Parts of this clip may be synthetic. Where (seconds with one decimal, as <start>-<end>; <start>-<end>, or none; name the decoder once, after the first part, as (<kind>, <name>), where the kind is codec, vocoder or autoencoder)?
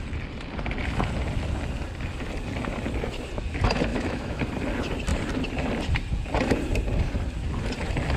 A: 3.9-4.4 (autoencoder, DAC-VAE)